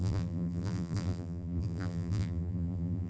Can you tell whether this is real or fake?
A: fake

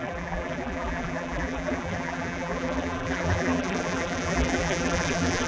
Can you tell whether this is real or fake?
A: fake